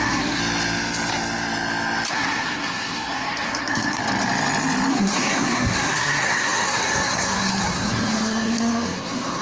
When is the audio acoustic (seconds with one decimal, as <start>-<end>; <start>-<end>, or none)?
0.4-2.1; 4.0-4.9